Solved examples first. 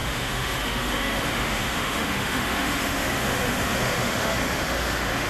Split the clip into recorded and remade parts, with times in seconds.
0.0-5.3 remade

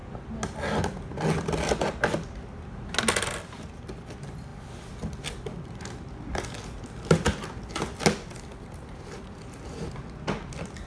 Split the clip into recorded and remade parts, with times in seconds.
0.0-10.9 recorded

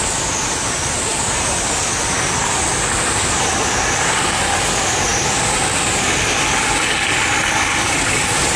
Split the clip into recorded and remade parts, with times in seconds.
0.0-8.6 recorded

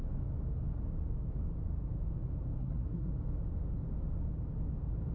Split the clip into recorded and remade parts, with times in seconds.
0.0-2.6 recorded; 2.6-3.1 remade; 3.1-5.1 recorded

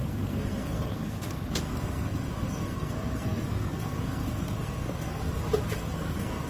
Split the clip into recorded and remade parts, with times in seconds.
0.0-5.2 remade; 5.2-5.7 recorded; 5.7-6.5 remade

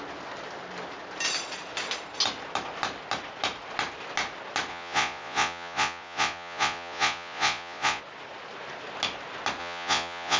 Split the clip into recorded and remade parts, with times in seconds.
0.0-4.7 recorded; 4.7-8.0 remade; 8.0-9.6 recorded; 9.6-10.4 remade